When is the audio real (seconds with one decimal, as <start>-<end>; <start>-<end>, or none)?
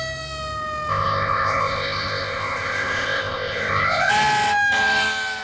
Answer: 0.0-0.9; 4.1-5.4